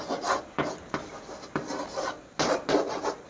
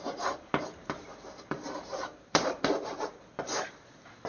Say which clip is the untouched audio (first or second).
first